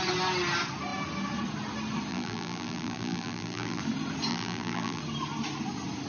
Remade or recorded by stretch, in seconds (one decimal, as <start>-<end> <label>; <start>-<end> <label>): 0.0-2.1 recorded; 2.1-3.8 remade; 3.8-4.3 recorded; 4.3-5.0 remade; 5.0-6.1 recorded